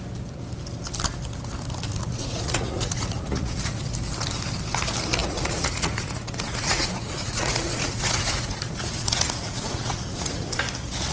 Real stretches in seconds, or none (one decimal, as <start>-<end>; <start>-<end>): 0.0-2.0; 3.9-5.2; 10.5-11.1